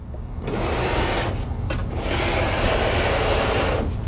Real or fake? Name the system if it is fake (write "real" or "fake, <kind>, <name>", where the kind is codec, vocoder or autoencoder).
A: real